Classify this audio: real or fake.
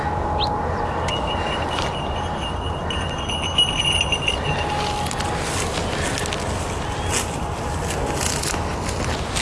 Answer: real